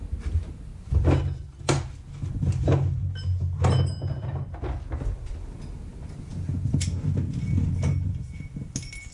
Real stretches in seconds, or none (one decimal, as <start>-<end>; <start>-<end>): 0.0-9.1